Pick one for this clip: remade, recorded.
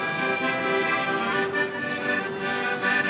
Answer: recorded